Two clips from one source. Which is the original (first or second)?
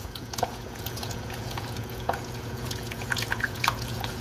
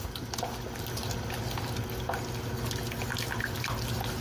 second